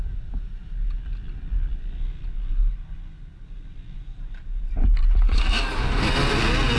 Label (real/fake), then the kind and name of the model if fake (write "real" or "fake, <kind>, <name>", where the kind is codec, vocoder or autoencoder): real